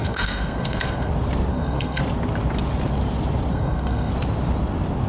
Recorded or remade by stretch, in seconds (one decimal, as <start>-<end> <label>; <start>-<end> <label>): 0.0-1.1 remade; 1.1-1.5 recorded; 1.5-2.0 remade; 2.0-3.5 recorded; 3.5-4.1 remade; 4.1-5.1 recorded